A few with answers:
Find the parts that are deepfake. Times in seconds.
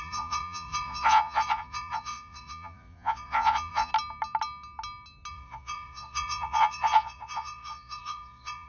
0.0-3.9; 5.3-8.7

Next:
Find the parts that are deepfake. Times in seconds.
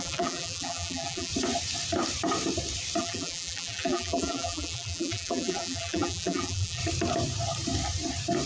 0.0-1.3; 3.0-6.8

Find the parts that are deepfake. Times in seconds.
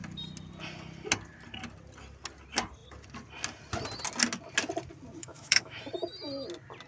5.2-5.8